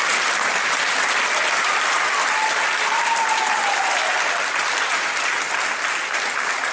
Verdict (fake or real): real